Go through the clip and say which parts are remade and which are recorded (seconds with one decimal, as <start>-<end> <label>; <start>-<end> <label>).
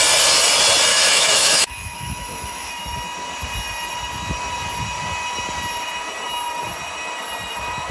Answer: 0.0-0.9 recorded; 0.9-2.7 remade; 2.7-7.9 recorded